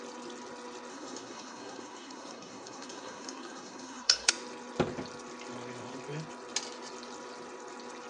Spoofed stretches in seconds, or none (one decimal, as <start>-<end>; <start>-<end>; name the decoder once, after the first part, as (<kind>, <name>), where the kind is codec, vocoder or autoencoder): 0.9-4.3 (codec, SNAC)